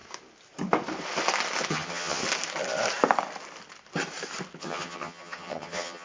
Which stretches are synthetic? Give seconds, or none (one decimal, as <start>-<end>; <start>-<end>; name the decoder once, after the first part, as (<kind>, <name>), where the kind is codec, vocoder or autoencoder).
1.7-2.2 (vocoder, HiFi-GAN); 4.6-6.0